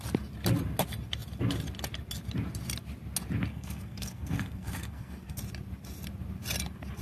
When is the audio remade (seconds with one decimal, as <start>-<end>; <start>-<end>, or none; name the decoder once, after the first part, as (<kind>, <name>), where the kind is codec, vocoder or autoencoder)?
3.5-5.4 (codec, SNAC)